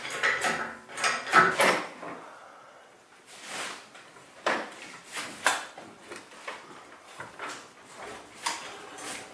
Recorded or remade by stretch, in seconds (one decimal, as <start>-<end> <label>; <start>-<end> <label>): 0.0-9.3 remade